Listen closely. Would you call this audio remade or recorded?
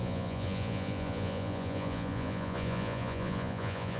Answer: remade